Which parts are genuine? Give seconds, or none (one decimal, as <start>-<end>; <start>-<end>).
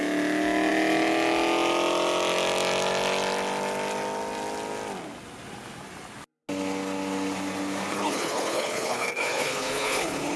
0.0-7.9